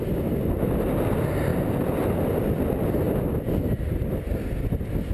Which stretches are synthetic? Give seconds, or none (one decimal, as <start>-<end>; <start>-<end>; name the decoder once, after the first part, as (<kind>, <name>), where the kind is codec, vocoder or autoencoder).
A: none